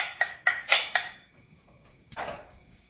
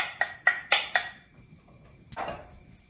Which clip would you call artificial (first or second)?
first